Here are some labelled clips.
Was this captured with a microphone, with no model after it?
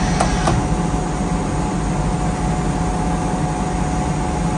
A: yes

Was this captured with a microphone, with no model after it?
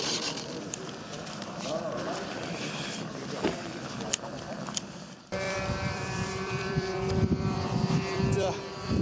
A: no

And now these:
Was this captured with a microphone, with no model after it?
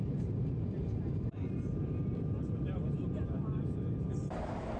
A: no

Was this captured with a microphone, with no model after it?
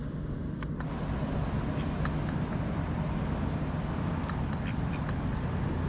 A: yes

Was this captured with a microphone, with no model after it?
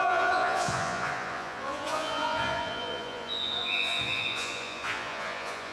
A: no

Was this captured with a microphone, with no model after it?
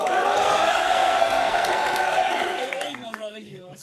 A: no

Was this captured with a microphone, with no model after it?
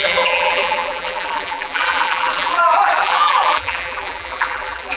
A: no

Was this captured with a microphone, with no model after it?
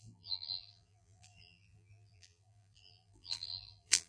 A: no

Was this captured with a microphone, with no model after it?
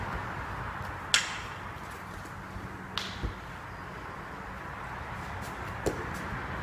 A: yes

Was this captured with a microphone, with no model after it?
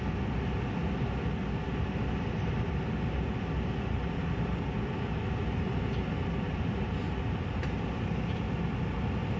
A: yes